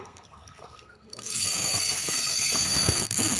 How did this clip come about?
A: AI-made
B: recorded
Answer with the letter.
A